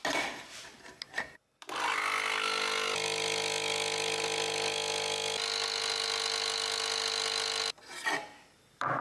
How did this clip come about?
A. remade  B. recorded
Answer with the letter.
B